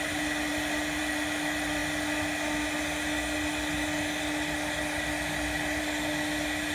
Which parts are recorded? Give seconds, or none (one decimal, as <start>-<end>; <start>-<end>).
0.0-6.7